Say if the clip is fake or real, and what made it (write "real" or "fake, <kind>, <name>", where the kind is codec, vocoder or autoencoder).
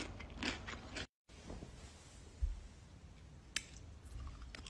real